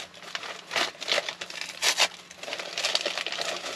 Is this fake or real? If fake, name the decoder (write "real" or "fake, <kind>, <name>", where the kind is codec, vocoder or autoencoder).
real